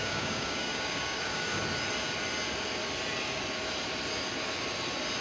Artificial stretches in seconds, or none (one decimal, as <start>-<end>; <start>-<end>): 0.0-1.6